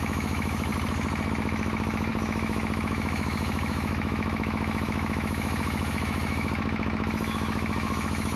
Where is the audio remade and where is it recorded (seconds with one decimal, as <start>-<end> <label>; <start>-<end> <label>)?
0.0-0.7 remade; 0.7-1.3 recorded; 1.3-8.4 remade